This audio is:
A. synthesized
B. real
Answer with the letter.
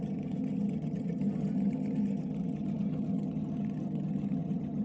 A